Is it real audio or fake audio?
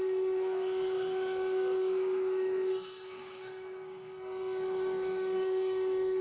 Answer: fake